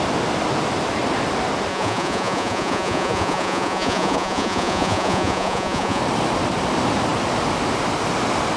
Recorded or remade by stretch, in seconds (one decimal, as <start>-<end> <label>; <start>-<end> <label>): 0.0-1.7 recorded; 1.7-6.0 remade; 6.0-8.6 recorded